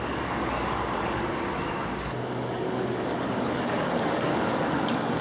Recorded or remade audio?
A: remade